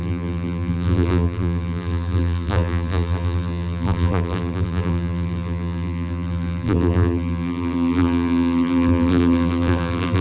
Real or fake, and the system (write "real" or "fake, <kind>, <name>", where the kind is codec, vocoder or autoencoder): fake, vocoder, BigVGAN v2